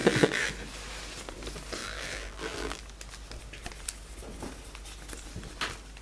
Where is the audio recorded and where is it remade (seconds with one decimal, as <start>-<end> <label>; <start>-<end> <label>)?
0.0-0.5 remade; 0.5-1.8 recorded; 1.8-2.8 remade; 2.8-6.0 recorded